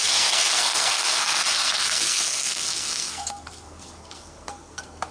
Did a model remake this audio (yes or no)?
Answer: yes